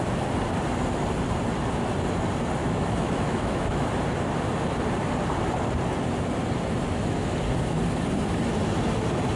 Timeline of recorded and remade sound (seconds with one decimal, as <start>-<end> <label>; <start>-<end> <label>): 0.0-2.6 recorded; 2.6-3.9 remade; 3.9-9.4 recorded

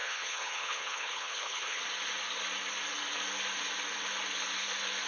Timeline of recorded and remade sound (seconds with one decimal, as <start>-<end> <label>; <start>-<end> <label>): 0.0-1.8 remade; 1.8-5.1 recorded

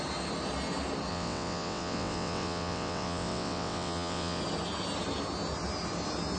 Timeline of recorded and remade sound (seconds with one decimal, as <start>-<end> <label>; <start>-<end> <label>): 0.0-1.1 recorded; 1.1-4.4 remade; 4.4-6.4 recorded